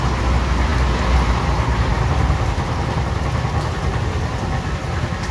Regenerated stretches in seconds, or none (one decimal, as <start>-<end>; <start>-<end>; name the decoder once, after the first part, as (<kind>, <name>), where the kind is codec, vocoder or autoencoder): none